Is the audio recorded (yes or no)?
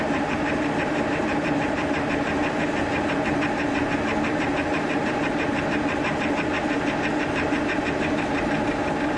yes